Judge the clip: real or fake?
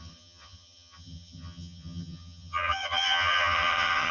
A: fake